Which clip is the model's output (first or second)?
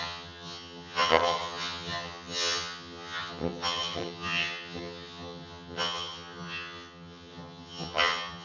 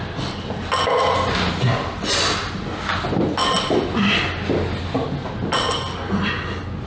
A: first